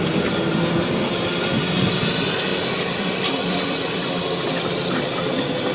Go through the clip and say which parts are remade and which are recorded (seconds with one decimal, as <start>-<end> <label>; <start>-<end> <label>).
0.0-0.5 recorded; 0.5-1.3 remade; 1.3-2.5 recorded; 2.5-3.9 remade; 3.9-5.7 recorded